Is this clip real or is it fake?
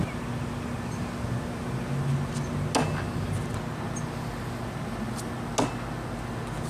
real